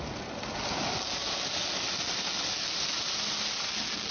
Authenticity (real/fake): real